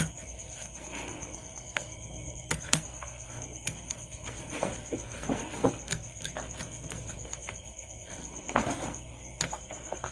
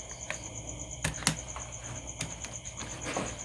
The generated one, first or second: first